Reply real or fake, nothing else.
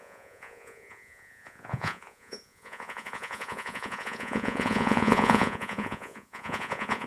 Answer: fake